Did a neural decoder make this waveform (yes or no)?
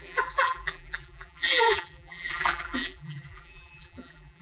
yes